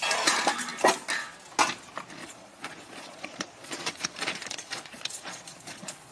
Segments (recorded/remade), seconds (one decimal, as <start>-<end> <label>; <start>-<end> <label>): 0.0-2.2 recorded; 2.2-6.1 remade